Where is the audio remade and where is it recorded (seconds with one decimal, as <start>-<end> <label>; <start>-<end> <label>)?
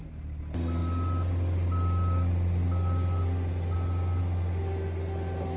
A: 0.0-5.6 recorded